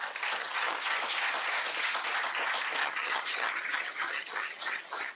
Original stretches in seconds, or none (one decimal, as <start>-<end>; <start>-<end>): 0.0-0.4; 1.0-2.8